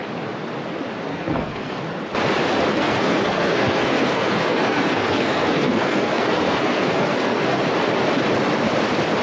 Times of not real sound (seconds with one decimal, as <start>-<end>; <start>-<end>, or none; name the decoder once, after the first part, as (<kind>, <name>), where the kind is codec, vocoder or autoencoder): 1.1-1.8 (codec, SNAC); 2.7-7.6